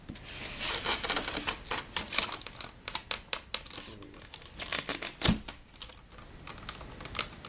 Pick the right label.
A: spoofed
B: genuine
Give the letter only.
B